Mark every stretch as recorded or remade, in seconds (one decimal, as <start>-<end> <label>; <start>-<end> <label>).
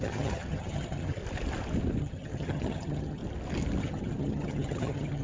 0.0-1.2 remade; 1.2-2.0 recorded; 2.0-3.2 remade; 3.2-3.8 recorded; 3.8-5.2 remade